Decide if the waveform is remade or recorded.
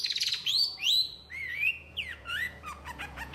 remade